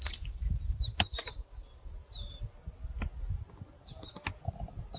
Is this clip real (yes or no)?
yes